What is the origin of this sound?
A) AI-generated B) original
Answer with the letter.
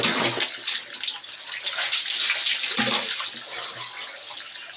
B